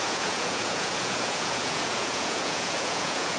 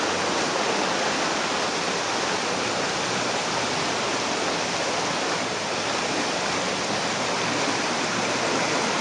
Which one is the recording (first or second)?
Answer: second